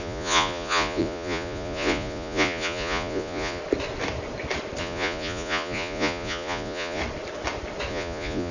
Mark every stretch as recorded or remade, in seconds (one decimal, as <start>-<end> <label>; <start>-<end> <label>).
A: 0.0-3.6 remade; 3.6-4.8 recorded; 4.8-7.0 remade; 7.0-7.9 recorded; 7.9-8.5 remade